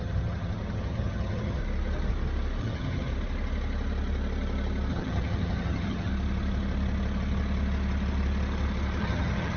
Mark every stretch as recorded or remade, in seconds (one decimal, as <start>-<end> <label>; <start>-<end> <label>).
0.0-1.6 remade; 1.6-2.6 recorded; 2.6-3.1 remade; 3.1-4.9 recorded; 4.9-6.1 remade; 6.1-9.0 recorded; 9.0-9.6 remade